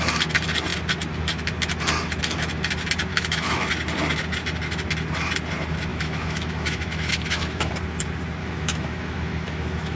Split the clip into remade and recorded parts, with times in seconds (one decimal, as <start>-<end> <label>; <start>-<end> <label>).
0.0-3.1 recorded; 3.1-3.7 remade; 3.7-5.9 recorded; 5.9-7.7 remade; 7.7-8.4 recorded; 8.4-10.0 remade